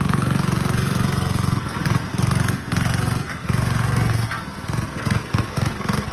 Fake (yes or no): yes